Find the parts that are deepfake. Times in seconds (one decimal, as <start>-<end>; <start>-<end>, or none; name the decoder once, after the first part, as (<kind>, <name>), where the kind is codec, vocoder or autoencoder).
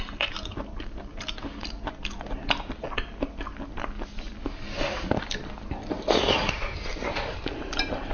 none